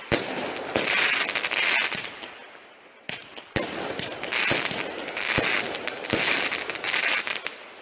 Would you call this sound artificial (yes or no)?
no